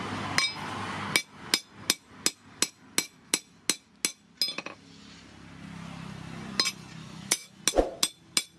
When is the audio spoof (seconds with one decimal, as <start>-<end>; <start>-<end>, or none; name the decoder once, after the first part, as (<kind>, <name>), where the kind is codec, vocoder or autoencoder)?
7.0-7.6 (autoencoder, DAC-VAE)